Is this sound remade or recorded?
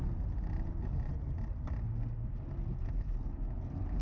recorded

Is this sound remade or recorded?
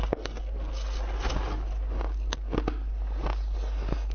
recorded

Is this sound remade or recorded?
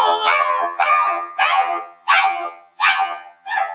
remade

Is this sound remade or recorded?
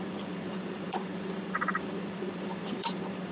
remade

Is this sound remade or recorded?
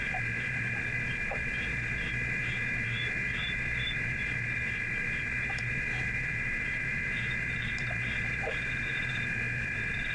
remade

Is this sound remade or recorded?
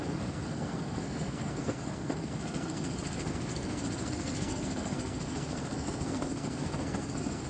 remade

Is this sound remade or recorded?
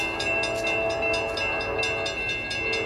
recorded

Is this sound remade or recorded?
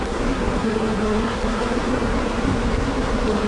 remade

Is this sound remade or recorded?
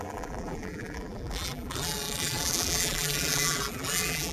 remade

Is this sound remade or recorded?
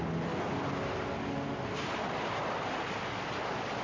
recorded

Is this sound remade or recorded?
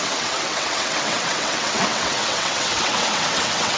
remade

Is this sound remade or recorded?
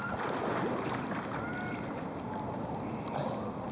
recorded